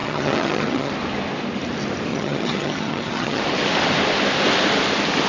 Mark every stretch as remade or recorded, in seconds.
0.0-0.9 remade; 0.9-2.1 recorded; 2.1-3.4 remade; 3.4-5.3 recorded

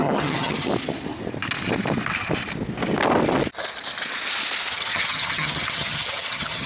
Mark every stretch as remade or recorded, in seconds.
0.0-0.7 remade; 0.7-4.7 recorded; 4.7-6.7 remade

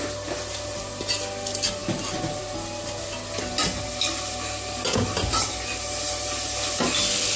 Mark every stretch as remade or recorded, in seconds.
0.0-7.4 recorded

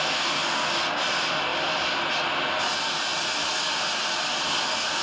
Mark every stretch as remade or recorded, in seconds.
0.0-5.0 recorded

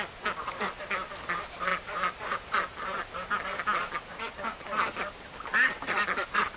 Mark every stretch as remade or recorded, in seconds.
0.0-6.6 recorded

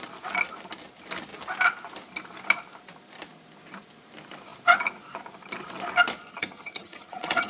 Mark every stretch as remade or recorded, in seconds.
0.0-6.2 recorded; 6.2-7.5 remade

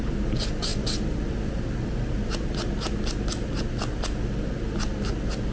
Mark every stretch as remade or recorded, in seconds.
0.0-5.5 recorded

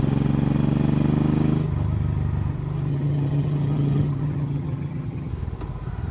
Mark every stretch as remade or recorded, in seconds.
0.0-2.9 recorded; 2.9-5.3 remade; 5.3-6.1 recorded